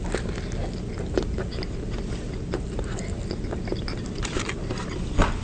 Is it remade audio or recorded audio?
recorded